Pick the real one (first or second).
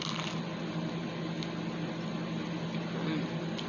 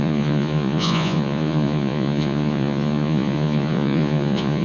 first